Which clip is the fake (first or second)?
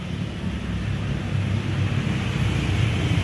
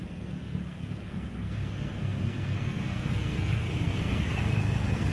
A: second